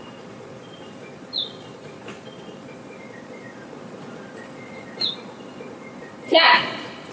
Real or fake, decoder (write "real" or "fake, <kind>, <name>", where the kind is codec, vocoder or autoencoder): fake, vocoder, Vocos